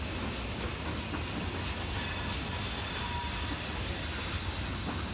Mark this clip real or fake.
real